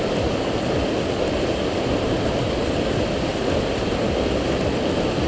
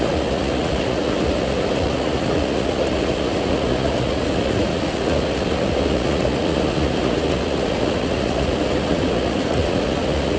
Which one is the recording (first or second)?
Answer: first